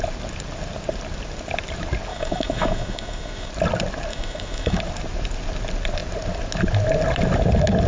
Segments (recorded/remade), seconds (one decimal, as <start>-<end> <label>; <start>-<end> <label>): 0.0-2.1 recorded; 2.1-3.5 remade; 3.5-4.1 recorded; 4.1-4.8 remade; 4.8-7.9 recorded